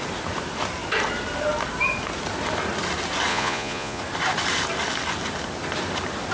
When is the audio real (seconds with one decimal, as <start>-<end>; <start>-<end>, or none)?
0.0-3.3; 4.0-6.3